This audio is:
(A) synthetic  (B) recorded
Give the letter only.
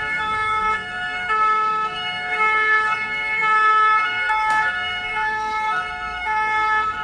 A